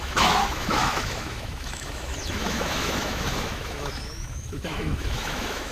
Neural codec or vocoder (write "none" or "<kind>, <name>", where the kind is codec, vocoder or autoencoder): autoencoder, DAC-VAE